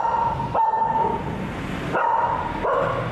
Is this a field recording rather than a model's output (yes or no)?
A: yes